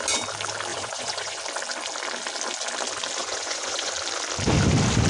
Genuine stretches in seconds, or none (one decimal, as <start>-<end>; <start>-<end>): 0.0-0.7; 1.4-3.2; 3.9-5.1